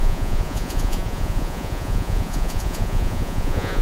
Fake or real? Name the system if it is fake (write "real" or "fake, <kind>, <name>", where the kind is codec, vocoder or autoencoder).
fake, vocoder, Vocos